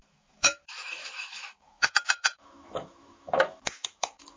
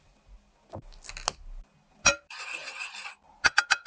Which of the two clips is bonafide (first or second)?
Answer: second